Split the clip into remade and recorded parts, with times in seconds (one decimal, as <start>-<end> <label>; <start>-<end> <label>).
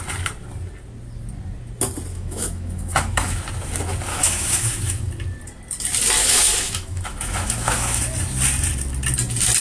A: 0.0-2.1 recorded; 2.1-3.4 remade; 3.4-4.1 recorded; 4.1-5.1 remade; 5.1-6.2 recorded; 6.2-8.0 remade; 8.0-9.6 recorded